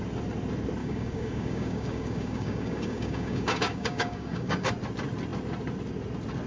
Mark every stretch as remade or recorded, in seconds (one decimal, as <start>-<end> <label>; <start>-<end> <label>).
0.0-0.8 recorded; 0.8-4.7 remade; 4.7-6.5 recorded